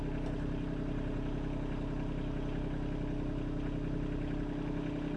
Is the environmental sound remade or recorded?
recorded